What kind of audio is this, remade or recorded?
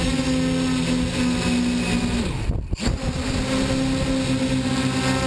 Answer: recorded